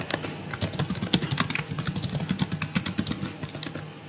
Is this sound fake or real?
real